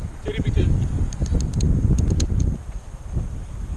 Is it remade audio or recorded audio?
recorded